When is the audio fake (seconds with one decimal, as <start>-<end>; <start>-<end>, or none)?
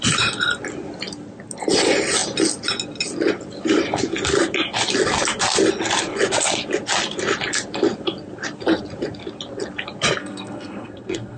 10.2-11.4